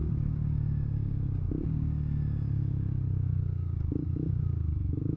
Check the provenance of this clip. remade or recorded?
remade